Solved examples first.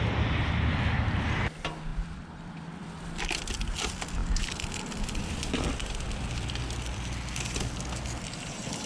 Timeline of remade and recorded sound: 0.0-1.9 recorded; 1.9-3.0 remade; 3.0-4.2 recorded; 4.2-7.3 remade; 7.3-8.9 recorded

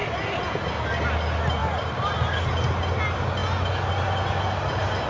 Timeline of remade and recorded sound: 0.0-1.6 recorded; 1.6-2.5 remade; 2.5-5.1 recorded

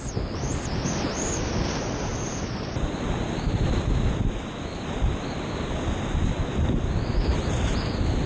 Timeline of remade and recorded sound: 0.0-7.3 recorded; 7.3-7.8 remade; 7.8-8.3 recorded

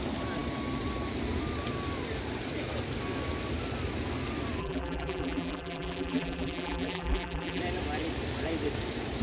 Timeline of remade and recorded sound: 0.0-4.6 recorded; 4.6-7.6 remade; 7.6-9.2 recorded

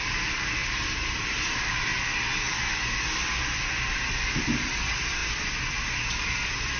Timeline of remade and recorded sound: 0.0-1.9 remade; 1.9-4.4 recorded; 4.4-5.2 remade; 5.2-5.8 recorded; 5.8-6.8 remade

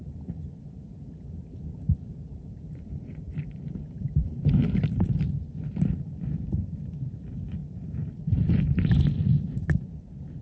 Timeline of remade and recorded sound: 0.0-2.3 recorded; 2.3-4.8 remade; 4.8-7.6 recorded; 7.6-8.6 remade; 8.6-10.4 recorded